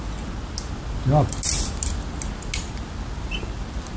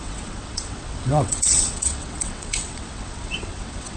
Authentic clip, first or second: first